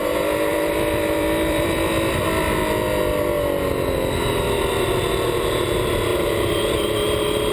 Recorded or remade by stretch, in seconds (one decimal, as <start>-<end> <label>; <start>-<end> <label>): 0.0-0.5 recorded; 0.5-1.9 remade; 1.9-6.1 recorded; 6.1-6.6 remade; 6.6-7.5 recorded

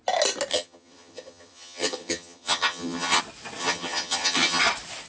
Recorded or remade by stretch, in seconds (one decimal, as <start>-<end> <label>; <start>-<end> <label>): 0.0-0.5 recorded; 0.5-3.2 remade; 3.2-3.6 recorded; 3.6-4.6 remade; 4.6-5.1 recorded

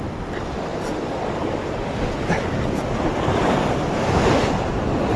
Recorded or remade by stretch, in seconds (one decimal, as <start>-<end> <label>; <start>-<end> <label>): 0.0-5.2 recorded